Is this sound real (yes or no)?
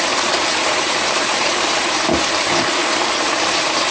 no